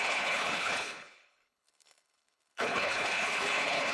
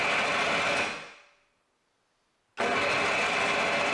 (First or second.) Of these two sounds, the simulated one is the first